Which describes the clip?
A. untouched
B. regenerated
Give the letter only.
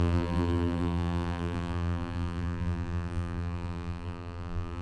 B